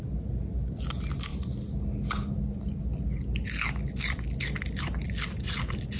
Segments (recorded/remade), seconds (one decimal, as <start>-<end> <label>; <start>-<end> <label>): 0.0-6.0 recorded